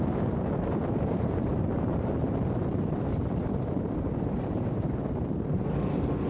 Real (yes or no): no